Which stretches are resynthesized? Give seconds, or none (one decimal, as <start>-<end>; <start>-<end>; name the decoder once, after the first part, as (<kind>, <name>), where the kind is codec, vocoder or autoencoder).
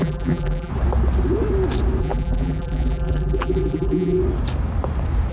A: 0.0-0.7 (vocoder, BigVGAN v2); 2.0-4.2